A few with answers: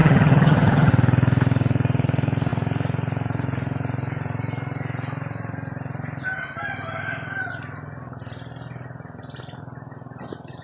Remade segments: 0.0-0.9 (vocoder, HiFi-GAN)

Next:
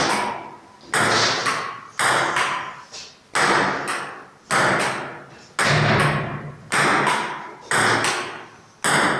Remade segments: none

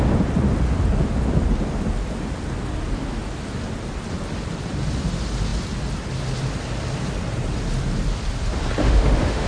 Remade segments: 8.8-9.5 (autoencoder, DAC-VAE)

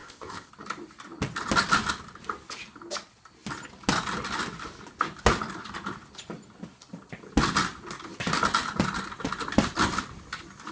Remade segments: 0.0-0.5 (codec, ZipCodec)

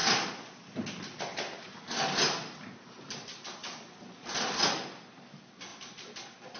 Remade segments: 3.6-4.4 (vocoder, BigVGAN v2)

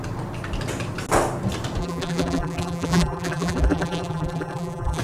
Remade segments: 1.8-5.0 (vocoder, BigVGAN v2)

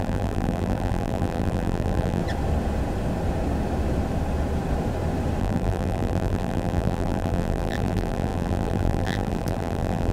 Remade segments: 0.0-2.2 (vocoder, BigVGAN v2); 5.4-10.1